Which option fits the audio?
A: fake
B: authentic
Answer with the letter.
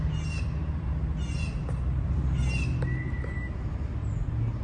B